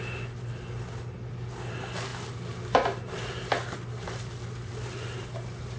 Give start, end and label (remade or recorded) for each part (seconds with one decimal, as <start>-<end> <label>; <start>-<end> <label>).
0.0-5.8 recorded